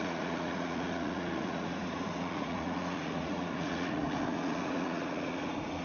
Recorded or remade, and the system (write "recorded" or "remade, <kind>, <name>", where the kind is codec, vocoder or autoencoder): remade, vocoder, Vocos